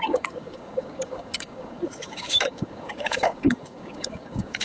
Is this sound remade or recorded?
remade